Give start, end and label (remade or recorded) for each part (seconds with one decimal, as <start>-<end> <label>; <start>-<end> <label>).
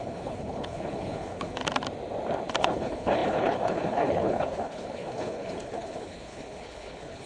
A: 0.0-1.6 remade; 1.6-2.6 recorded; 2.6-7.3 remade